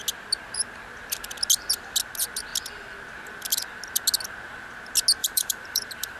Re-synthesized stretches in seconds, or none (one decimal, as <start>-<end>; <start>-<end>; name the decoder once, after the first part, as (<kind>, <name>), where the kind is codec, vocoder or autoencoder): 5.2-6.2 (vocoder, BigVGAN v2)

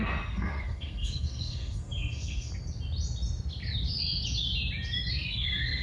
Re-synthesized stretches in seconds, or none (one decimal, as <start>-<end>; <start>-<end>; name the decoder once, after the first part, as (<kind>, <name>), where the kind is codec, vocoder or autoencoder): 0.0-2.5 (codec, SNAC); 5.1-5.8